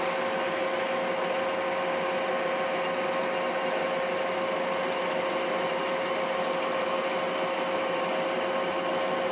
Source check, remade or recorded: recorded